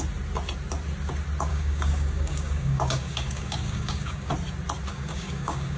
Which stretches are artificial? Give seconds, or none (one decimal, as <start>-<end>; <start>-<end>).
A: 1.5-4.3; 4.9-5.8